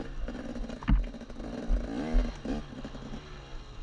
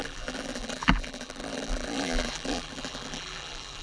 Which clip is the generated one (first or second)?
second